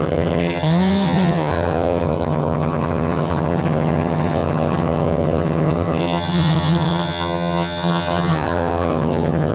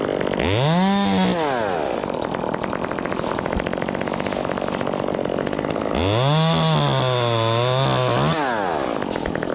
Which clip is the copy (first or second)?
first